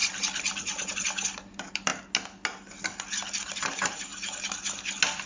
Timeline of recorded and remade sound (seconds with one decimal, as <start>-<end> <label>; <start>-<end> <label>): 0.0-1.9 remade; 1.9-2.8 recorded; 2.8-4.1 remade; 4.1-5.3 recorded